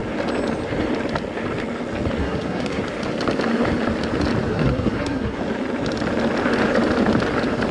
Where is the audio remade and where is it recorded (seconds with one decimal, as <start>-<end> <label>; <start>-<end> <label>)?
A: 0.0-2.2 recorded; 2.2-2.8 remade; 2.8-4.5 recorded; 4.5-5.4 remade; 5.4-7.7 recorded